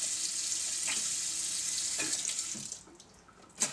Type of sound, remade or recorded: recorded